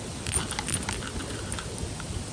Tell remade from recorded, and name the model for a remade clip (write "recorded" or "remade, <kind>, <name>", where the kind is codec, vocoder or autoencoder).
recorded